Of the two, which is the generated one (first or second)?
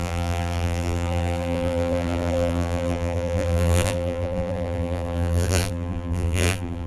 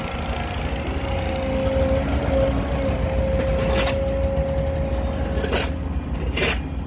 first